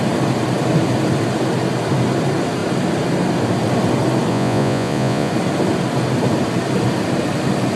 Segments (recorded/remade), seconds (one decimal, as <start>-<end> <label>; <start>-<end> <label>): 0.0-4.3 recorded; 4.3-5.3 remade; 5.3-7.8 recorded